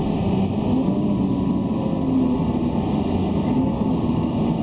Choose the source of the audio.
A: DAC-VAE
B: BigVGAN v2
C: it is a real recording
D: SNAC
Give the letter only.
B